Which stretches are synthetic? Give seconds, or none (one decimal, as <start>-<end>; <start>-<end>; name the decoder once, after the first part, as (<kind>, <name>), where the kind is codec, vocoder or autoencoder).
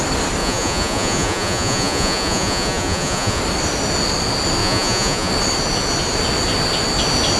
0.4-3.4 (vocoder, Vocos); 4.6-5.3